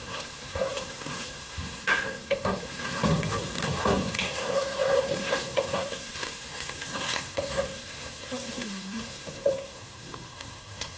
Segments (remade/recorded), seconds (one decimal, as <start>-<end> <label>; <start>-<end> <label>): 0.0-11.0 remade